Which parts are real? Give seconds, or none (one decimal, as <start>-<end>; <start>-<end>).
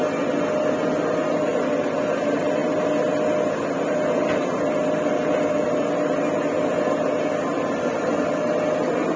0.0-9.2